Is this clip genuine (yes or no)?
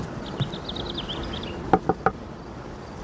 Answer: no